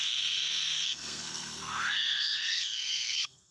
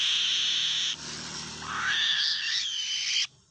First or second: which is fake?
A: first